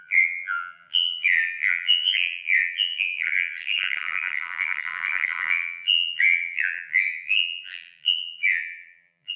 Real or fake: fake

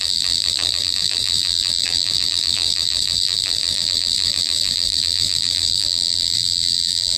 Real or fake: fake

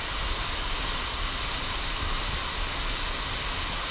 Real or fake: real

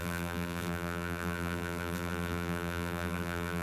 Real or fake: fake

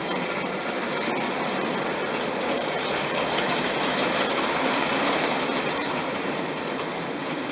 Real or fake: fake